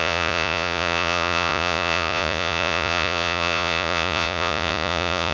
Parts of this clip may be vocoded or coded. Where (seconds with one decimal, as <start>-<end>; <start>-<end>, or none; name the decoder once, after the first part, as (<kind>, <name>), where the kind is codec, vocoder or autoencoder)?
0.0-5.3 (vocoder, Vocos)

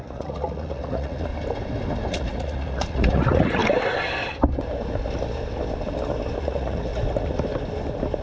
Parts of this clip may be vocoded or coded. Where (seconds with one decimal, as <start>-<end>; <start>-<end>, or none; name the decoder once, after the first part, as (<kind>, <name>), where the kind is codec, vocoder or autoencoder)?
0.0-1.3 (vocoder, Vocos); 2.1-3.6; 6.4-6.9

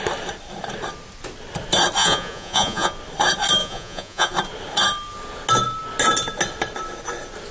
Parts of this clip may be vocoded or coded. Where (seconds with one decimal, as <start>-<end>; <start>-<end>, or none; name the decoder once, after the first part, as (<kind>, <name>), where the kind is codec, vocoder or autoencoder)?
2.0-2.9 (vocoder, Vocos); 3.6-4.3

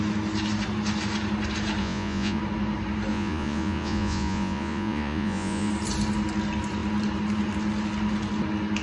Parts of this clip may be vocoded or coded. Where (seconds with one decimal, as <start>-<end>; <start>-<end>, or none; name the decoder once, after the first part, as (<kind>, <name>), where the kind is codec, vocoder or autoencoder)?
1.8-2.4 (vocoder, Vocos); 3.1-5.7

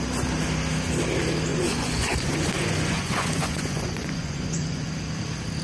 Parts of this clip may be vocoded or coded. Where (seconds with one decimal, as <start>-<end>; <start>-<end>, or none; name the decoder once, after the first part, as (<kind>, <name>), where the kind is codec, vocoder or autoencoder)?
1.5-4.9 (vocoder, Vocos)

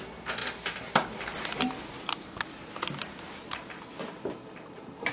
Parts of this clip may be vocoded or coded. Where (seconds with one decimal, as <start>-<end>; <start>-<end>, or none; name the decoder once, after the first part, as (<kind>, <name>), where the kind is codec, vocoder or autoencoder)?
none

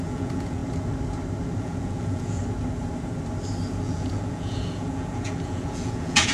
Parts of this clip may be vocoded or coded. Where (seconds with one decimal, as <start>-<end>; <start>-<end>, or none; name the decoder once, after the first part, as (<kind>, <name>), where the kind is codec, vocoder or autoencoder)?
0.0-0.6 (vocoder, Vocos); 1.6-2.4; 3.7-6.3